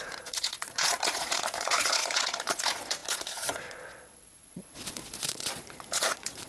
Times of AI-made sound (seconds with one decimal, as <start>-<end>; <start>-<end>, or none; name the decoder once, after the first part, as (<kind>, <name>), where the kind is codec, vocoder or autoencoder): 0.0-6.5 (vocoder, Vocos)